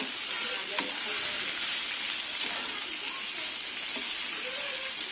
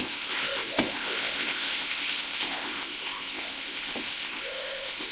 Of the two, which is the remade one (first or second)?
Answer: second